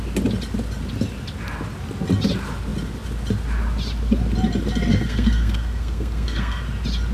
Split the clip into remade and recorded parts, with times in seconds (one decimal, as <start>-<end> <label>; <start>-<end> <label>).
0.0-4.9 recorded; 4.9-6.6 remade; 6.6-7.1 recorded